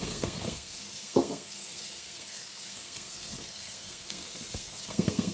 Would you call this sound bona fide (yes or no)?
no